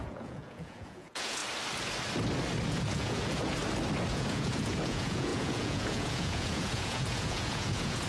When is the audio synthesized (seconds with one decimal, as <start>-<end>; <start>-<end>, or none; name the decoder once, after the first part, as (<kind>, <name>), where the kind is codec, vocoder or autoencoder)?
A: 0.0-1.4 (vocoder, Vocos); 2.7-3.6; 4.1-8.1